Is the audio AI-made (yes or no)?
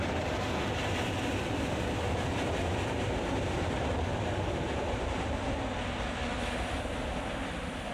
no